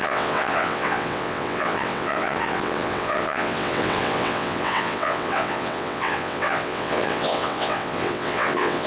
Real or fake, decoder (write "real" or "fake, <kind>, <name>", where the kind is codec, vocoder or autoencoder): fake, vocoder, WaveNeXt